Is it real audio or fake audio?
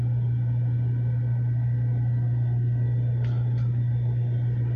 real